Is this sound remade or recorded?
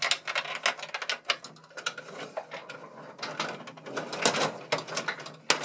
recorded